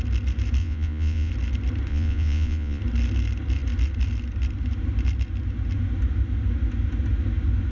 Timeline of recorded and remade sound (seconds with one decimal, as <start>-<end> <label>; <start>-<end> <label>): 0.0-0.6 recorded; 0.6-1.3 remade; 1.3-1.9 recorded; 1.9-2.8 remade; 2.8-7.7 recorded